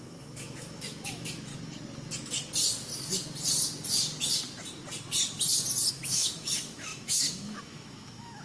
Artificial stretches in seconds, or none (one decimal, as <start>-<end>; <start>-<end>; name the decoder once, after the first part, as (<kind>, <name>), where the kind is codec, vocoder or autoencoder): 0.0-1.5 (autoencoder, DAC-VAE); 5.9-8.4